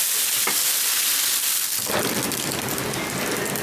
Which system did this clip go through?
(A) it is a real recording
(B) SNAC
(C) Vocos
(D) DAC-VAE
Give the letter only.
A